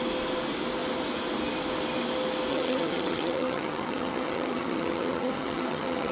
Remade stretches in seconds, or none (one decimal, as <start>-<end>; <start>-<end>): 2.5-6.1